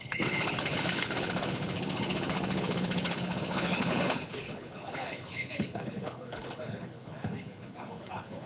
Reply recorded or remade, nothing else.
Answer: remade